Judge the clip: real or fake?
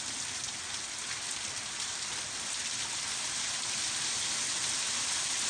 real